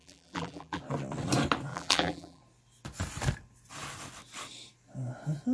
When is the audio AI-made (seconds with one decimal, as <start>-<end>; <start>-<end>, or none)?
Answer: 0.0-0.8; 1.7-2.4